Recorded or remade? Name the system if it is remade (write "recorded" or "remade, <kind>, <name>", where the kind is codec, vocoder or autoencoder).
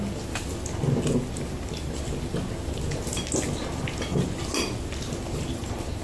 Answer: recorded